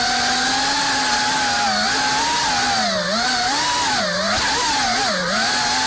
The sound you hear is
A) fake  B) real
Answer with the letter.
B